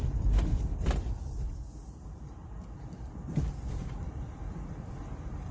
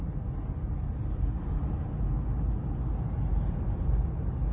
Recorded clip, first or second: second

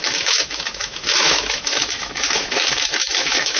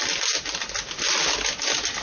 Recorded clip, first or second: second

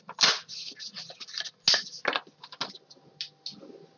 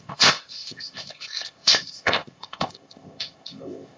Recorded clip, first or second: first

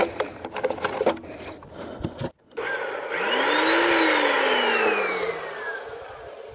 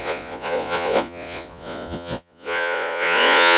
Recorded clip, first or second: first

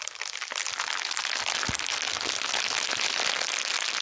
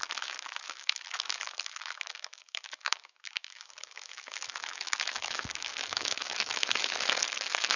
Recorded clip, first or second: first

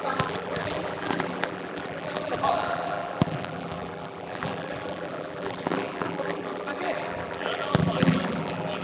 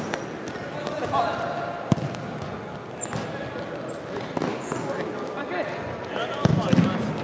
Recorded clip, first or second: second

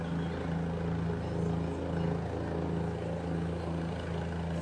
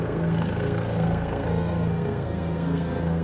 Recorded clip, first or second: first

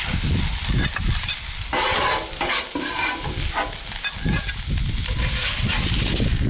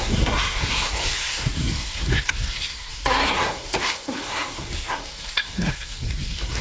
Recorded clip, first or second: first